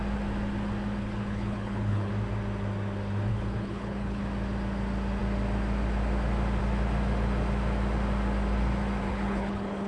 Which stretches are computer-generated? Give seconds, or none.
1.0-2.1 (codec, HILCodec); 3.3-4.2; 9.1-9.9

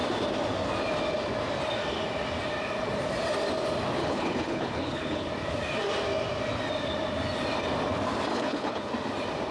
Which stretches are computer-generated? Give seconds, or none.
4.0-5.3 (codec, HILCodec); 8.3-8.9